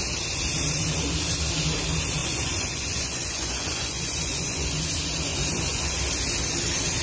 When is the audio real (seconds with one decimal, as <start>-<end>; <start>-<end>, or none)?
0.0-2.2; 4.8-5.3; 5.9-7.0